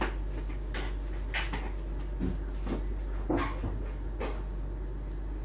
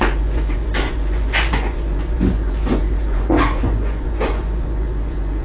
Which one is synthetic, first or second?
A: second